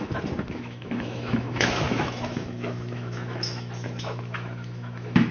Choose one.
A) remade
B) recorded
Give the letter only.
A